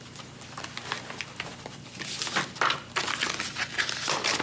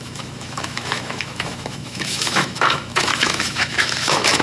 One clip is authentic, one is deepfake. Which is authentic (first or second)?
first